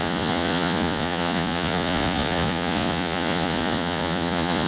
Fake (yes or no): yes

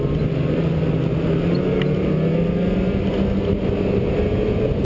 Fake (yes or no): no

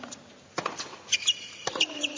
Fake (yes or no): no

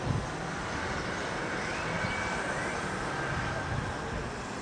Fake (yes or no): no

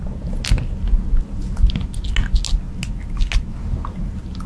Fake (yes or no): no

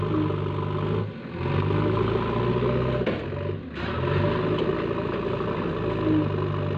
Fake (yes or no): no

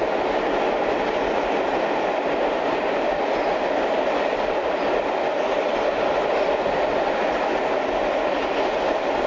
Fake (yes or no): no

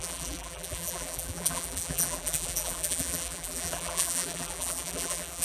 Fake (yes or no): yes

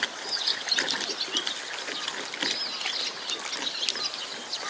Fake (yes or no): no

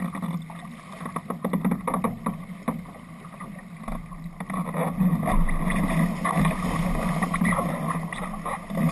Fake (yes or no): no